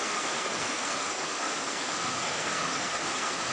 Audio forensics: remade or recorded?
remade